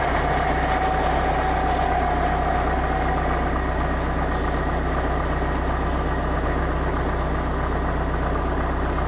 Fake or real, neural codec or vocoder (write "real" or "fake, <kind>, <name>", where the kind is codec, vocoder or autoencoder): real